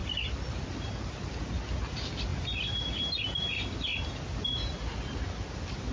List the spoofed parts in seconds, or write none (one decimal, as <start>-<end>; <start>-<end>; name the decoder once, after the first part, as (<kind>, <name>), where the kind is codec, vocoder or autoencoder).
none